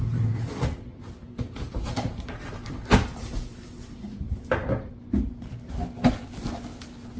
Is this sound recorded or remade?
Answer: recorded